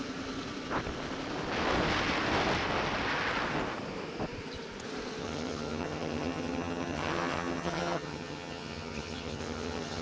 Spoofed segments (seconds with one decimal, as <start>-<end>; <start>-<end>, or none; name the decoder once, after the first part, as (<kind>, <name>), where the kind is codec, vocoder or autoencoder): 5.2-10.0 (vocoder, HiFi-GAN)